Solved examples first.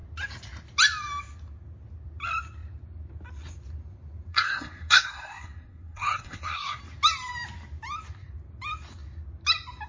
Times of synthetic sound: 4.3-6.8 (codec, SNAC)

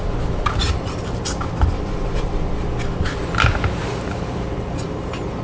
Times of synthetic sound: none

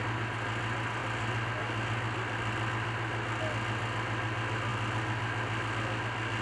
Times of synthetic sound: none

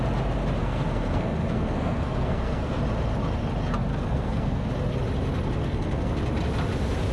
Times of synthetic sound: 0.6-2.8 (codec, SNAC); 3.9-4.7; 5.6-6.1